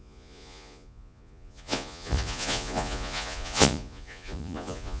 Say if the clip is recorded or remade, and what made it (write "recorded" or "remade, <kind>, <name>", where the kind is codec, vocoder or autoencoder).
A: remade, vocoder, Vocos